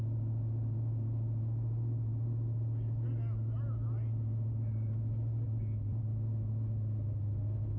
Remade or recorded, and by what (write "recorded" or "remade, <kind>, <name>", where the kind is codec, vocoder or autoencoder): recorded